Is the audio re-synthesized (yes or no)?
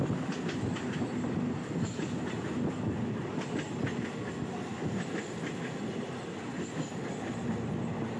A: no